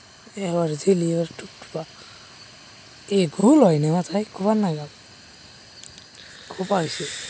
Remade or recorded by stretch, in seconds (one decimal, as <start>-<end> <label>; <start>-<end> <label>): 0.0-7.3 recorded